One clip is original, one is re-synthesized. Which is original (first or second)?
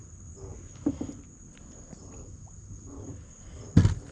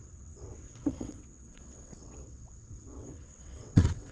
first